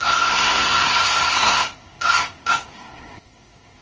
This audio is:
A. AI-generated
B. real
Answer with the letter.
A